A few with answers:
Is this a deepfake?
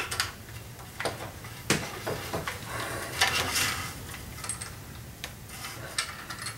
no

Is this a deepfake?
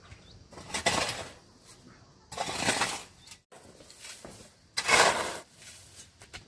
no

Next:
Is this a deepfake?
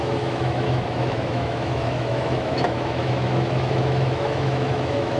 yes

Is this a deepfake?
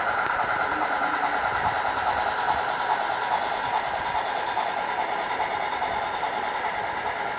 no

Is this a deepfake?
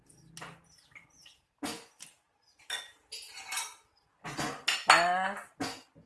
no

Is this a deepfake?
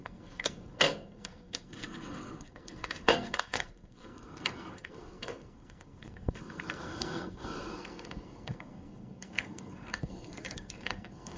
yes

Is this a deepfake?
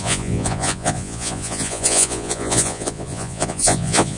yes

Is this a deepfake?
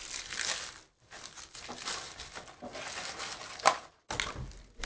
no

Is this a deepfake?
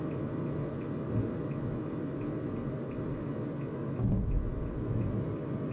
no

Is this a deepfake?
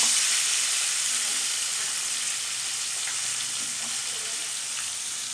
no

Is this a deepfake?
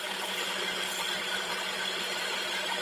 yes